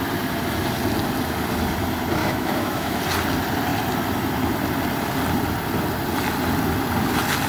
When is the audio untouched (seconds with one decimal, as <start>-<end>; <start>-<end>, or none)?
0.0-2.2; 3.0-7.5